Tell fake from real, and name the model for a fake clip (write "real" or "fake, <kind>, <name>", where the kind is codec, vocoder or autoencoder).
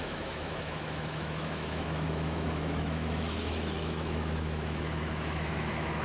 fake, autoencoder, DAC-VAE